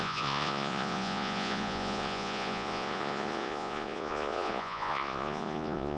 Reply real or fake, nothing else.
fake